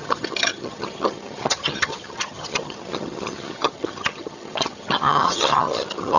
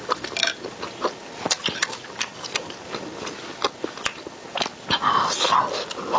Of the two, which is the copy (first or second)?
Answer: first